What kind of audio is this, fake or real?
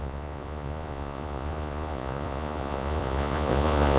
fake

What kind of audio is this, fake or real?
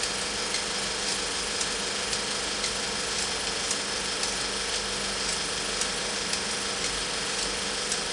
real